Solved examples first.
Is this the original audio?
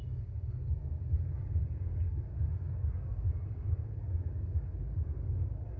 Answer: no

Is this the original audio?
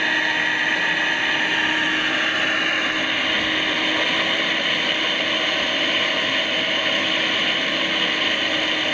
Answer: yes